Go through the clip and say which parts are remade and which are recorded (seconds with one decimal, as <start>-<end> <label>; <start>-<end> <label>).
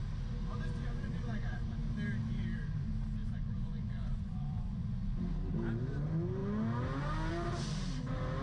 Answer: 0.0-0.8 recorded; 0.8-1.6 remade; 1.6-3.2 recorded; 3.2-5.2 remade; 5.2-8.4 recorded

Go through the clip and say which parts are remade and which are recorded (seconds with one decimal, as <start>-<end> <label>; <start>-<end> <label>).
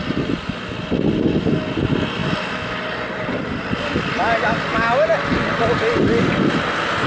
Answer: 0.0-7.1 recorded